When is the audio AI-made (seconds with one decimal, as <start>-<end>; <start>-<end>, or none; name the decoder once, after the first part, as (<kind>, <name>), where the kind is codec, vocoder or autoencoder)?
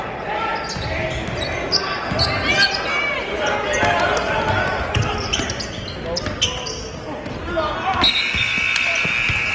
none